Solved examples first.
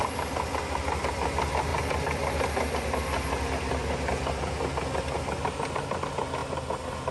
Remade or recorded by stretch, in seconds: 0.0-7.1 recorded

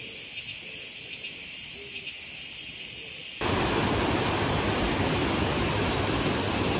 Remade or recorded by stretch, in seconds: 0.0-6.8 recorded

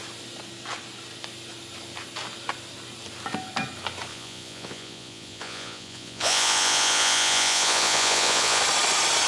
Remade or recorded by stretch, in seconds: 0.0-4.1 recorded; 4.1-8.6 remade; 8.6-9.3 recorded

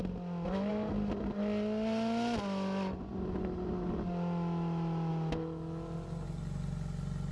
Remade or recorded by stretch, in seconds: 0.0-7.3 recorded

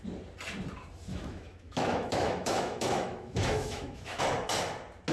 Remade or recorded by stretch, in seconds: 0.0-1.1 recorded; 1.1-4.2 remade; 4.2-5.1 recorded

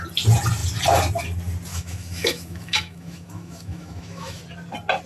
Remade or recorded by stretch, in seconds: 0.0-1.7 recorded; 1.7-4.4 remade; 4.4-5.1 recorded

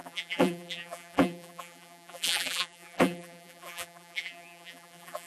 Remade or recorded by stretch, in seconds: 0.0-5.3 remade

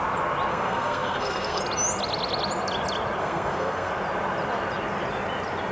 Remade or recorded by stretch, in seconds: 0.0-0.5 recorded; 0.5-1.6 remade; 1.6-3.2 recorded; 3.2-3.9 remade; 3.9-5.7 recorded